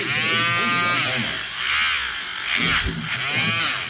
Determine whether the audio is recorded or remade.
recorded